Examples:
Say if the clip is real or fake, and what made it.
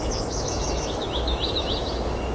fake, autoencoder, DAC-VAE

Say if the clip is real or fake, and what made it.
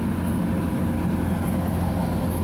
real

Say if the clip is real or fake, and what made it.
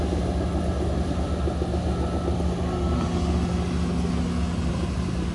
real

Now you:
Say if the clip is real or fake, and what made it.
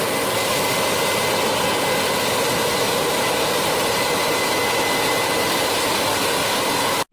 real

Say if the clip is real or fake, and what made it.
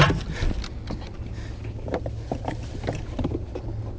real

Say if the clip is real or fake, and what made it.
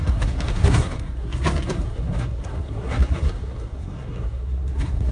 fake, codec, SNAC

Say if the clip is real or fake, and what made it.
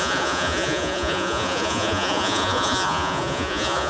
fake, vocoder, Vocos